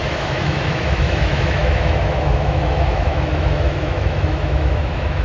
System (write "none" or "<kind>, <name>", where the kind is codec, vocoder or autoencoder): autoencoder, DAC-VAE